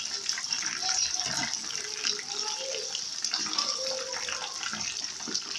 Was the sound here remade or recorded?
recorded